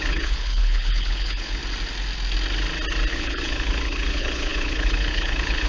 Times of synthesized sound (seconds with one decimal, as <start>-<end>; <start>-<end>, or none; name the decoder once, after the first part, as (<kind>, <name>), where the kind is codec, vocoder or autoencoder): 0.0-1.6 (codec, HILCodec); 3.1-5.7